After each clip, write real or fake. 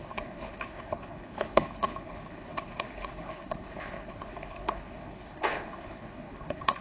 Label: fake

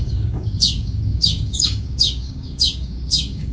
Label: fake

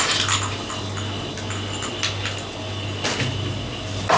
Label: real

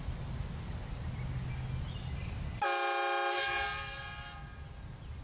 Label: real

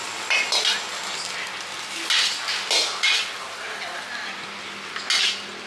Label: real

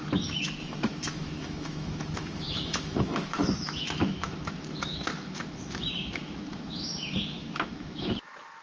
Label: fake